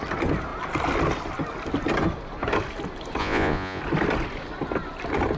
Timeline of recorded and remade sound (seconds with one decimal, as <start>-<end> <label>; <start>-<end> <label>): 0.0-3.2 recorded; 3.2-3.8 remade; 3.8-5.4 recorded